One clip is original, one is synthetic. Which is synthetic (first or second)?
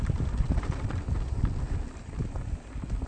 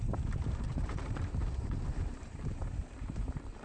second